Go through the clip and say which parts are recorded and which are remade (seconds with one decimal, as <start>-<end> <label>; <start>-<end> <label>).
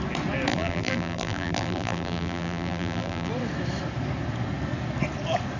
0.0-0.5 recorded; 0.5-3.3 remade; 3.3-5.6 recorded